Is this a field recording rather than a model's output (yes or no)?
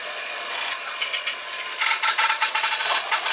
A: no